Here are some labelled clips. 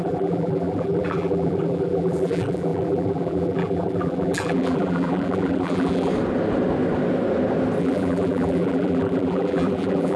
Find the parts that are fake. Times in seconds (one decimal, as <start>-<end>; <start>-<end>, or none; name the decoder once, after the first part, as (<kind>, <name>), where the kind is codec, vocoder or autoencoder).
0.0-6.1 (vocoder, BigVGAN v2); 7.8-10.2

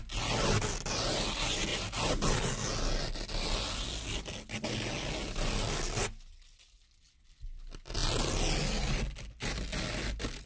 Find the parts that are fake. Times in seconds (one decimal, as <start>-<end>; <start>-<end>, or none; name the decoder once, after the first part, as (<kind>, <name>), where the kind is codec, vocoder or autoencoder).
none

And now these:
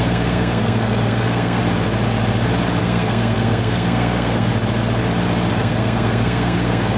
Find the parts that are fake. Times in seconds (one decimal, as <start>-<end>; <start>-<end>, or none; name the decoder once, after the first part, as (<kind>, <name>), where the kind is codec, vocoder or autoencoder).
0.0-1.6 (codec, SNAC); 2.8-4.5; 5.5-7.0